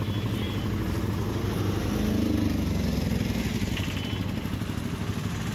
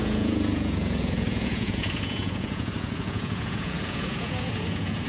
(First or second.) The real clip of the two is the first